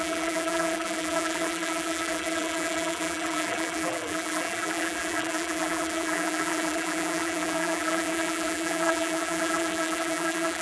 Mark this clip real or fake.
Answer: fake